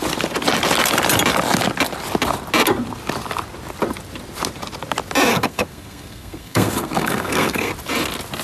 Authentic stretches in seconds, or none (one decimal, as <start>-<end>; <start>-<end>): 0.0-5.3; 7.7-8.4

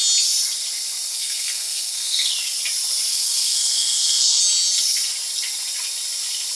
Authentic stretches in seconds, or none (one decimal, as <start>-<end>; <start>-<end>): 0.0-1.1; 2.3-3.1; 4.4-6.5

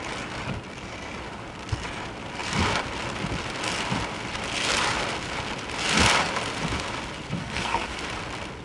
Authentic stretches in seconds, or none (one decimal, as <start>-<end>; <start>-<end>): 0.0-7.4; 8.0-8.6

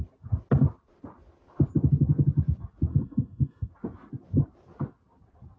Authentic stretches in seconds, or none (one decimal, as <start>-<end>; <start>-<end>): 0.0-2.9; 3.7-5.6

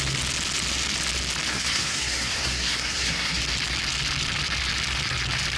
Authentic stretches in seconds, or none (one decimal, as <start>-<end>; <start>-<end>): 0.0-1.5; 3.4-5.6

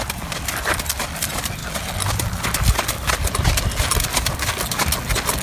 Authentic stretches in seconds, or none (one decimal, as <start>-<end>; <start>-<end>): 0.0-5.4

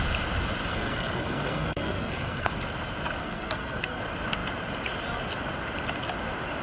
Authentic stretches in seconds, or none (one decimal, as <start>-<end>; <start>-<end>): 0.0-0.7; 2.5-3.2; 4.0-6.6

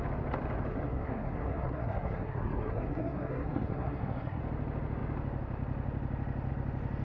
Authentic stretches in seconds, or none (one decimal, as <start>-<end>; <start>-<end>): 0.0-0.7; 4.4-7.0